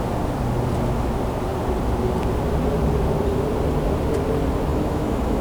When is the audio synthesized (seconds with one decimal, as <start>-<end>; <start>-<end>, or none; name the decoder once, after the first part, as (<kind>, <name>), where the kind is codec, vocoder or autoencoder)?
4.7-5.4 (autoencoder, DAC-VAE)